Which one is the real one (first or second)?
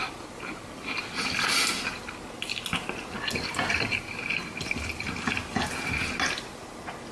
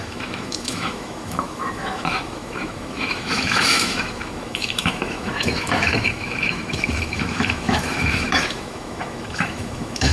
first